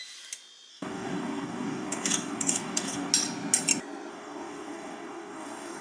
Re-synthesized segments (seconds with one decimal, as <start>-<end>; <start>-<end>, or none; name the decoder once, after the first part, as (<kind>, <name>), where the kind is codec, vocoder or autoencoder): 0.7-3.1 (codec, DAC); 4.1-5.8